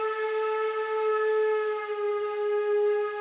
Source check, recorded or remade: recorded